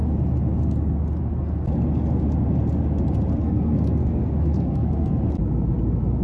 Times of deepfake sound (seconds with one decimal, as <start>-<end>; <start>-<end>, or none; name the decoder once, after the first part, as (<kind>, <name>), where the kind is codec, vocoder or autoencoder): 3.4-5.2 (codec, SNAC)